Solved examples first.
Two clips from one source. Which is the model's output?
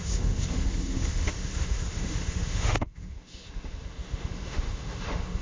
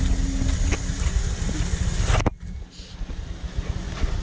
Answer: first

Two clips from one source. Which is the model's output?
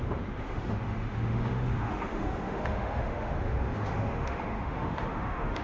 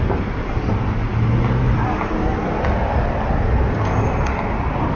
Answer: first